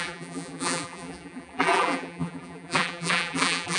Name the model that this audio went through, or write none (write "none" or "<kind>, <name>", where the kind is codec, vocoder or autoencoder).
vocoder, BigVGAN v2